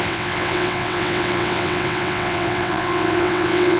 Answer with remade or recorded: remade